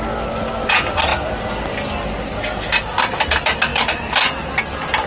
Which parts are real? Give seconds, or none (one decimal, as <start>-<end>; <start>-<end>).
0.0-5.1